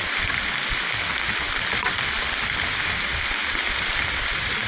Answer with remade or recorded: remade